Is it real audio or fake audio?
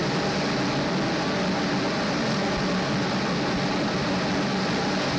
real